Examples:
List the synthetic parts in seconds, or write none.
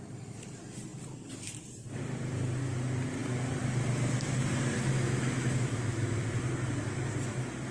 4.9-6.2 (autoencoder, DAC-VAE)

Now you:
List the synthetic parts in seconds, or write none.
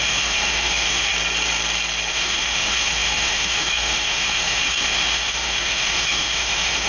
0.0-1.1 (autoencoder, DAC-VAE); 2.1-6.9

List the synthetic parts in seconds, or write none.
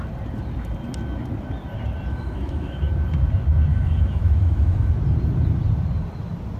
2.1-2.8 (autoencoder, DAC-VAE); 3.7-4.9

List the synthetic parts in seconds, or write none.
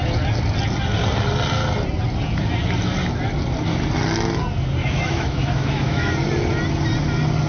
4.8-6.1 (autoencoder, DAC-VAE)